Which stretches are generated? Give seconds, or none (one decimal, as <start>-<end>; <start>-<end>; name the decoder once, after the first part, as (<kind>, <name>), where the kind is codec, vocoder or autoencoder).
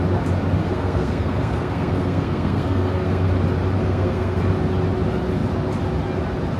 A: 0.6-3.3 (codec, SNAC); 3.8-4.4